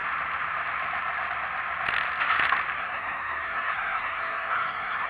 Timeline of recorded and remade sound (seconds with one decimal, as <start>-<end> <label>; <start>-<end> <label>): 0.0-2.8 recorded; 2.8-5.1 remade